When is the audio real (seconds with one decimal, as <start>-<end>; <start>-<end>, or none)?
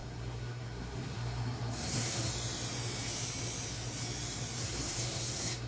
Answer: 2.3-4.6